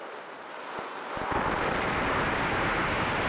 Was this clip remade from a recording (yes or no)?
no